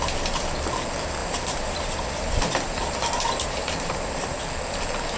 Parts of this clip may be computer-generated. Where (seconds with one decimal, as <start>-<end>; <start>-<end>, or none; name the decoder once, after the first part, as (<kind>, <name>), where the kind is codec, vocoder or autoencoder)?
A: 1.2-4.3 (vocoder, BigVGAN v2)